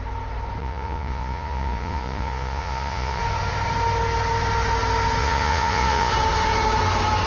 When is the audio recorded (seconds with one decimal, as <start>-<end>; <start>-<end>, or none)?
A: 0.0-0.6; 3.2-5.2; 6.1-7.3